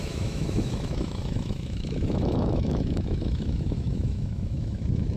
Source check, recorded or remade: remade